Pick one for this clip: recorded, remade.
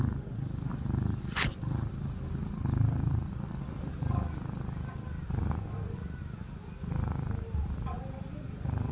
recorded